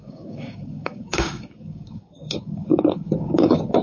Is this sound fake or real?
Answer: fake